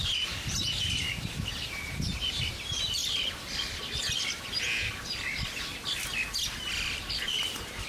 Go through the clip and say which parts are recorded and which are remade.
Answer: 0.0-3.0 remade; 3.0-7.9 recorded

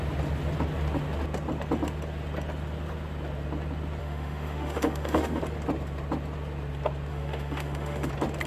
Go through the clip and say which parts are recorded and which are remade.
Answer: 0.0-4.0 recorded; 4.0-5.4 remade; 5.4-7.1 recorded; 7.1-8.1 remade; 8.1-8.5 recorded

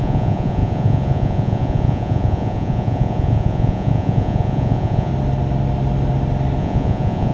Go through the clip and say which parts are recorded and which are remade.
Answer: 0.0-5.1 remade; 5.1-6.6 recorded; 6.6-7.3 remade